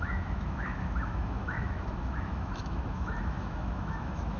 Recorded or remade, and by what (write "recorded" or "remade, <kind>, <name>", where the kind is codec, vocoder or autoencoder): remade, autoencoder, DAC-VAE